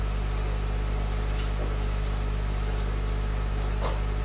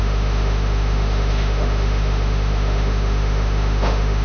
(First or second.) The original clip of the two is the first